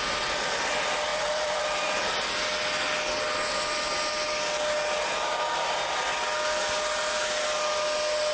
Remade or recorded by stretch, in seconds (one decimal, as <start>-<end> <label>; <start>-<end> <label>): 0.0-1.1 recorded; 1.1-2.1 remade; 2.1-8.3 recorded